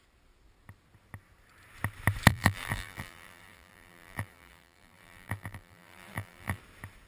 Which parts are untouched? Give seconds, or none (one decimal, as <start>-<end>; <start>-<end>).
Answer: 0.0-2.3; 6.6-7.1